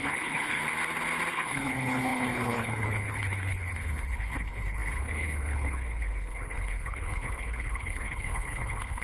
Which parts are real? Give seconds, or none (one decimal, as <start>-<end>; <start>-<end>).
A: 0.6-1.3